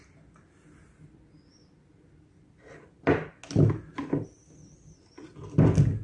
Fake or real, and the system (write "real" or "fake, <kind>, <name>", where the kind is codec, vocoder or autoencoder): real